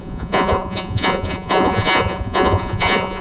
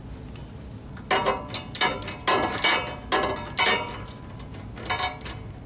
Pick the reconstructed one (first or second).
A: first